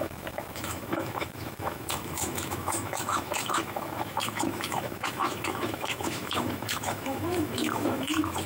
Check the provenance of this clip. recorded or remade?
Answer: remade